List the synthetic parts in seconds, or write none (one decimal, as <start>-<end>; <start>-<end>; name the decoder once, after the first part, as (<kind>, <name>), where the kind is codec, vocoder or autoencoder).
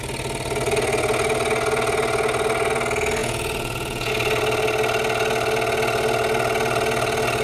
3.2-4.1 (vocoder, Vocos)